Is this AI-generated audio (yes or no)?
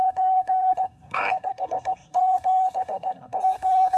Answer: yes